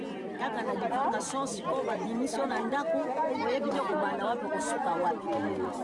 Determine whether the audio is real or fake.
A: real